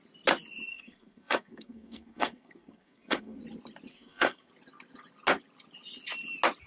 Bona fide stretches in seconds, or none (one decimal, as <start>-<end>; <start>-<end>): 0.0-0.7; 3.4-3.9; 4.5-6.7